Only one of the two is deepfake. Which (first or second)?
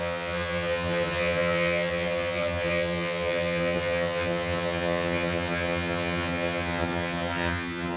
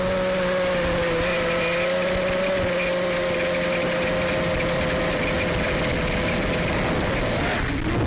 first